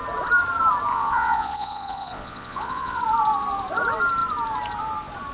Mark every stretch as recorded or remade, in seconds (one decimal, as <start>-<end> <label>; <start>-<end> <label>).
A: 0.0-0.9 recorded; 0.9-3.0 remade; 3.0-5.3 recorded